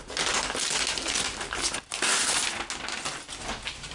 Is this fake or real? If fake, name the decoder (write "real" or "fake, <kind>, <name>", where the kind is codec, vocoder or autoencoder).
real